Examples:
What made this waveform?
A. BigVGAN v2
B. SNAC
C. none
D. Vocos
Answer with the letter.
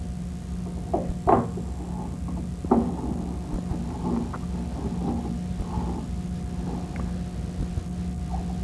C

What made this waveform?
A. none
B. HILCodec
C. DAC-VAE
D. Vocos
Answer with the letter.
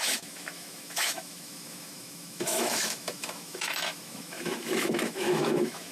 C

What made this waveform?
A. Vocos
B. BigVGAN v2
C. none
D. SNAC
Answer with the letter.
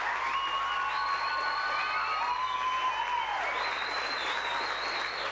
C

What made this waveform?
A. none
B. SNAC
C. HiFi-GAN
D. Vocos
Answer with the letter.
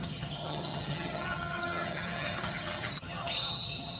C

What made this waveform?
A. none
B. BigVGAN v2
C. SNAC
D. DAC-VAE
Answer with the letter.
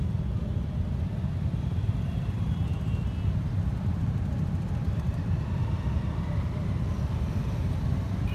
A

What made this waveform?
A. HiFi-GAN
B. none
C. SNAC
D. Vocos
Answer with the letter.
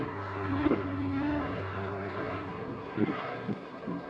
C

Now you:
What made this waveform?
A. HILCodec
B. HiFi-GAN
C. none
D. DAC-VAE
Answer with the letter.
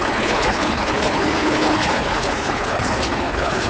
A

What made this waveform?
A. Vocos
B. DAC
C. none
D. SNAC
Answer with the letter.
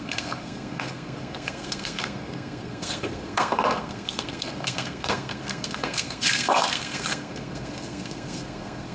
D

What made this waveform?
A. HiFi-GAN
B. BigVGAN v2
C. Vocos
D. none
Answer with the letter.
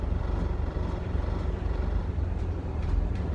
B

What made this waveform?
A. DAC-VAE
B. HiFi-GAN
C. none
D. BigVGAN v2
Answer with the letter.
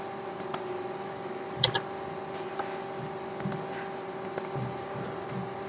C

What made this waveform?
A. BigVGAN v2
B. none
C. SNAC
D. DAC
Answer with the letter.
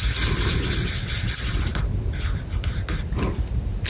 B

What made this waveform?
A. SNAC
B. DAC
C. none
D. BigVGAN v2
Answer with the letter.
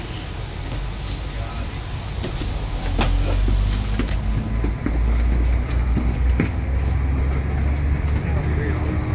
C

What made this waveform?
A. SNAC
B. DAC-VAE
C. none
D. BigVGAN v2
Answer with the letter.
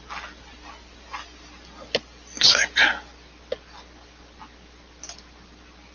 C